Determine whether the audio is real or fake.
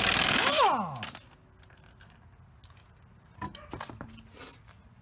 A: real